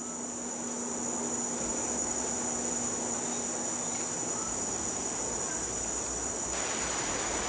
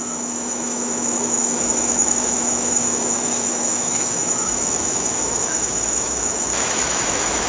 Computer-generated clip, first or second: second